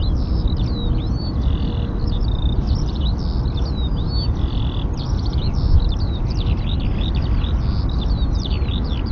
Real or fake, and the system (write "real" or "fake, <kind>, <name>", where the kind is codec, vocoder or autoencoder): real